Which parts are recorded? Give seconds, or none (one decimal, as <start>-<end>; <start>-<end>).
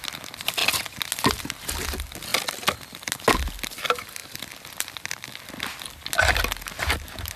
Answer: 0.0-7.4